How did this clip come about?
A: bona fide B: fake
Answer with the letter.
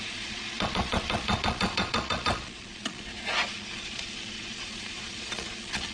B